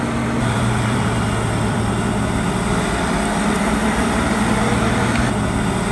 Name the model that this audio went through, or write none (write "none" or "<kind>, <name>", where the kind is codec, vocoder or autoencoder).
vocoder, BigVGAN v2